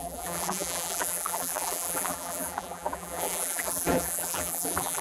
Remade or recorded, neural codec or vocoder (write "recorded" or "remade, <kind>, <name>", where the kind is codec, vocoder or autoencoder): remade, vocoder, BigVGAN v2